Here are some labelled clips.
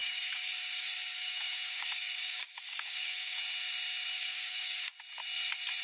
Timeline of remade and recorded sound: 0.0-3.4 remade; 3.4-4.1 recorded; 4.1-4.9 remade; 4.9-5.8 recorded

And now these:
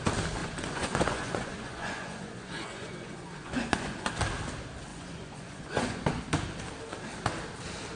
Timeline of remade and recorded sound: 0.0-0.4 recorded; 0.4-4.1 remade; 4.1-4.9 recorded; 4.9-6.2 remade; 6.2-8.0 recorded

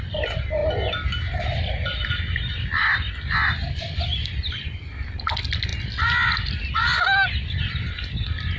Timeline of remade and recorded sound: 0.0-8.6 recorded

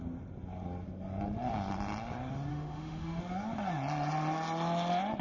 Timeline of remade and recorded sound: 0.0-2.5 recorded; 2.5-3.2 remade; 3.2-5.2 recorded

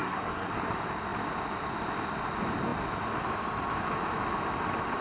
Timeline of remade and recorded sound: 0.0-0.5 remade; 0.5-5.0 recorded

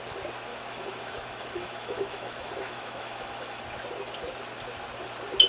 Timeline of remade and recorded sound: 0.0-0.5 recorded; 0.5-3.6 remade; 3.6-5.5 recorded